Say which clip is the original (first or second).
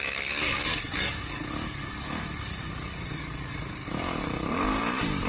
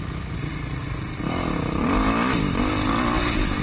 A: second